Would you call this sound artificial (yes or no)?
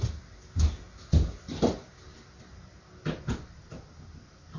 no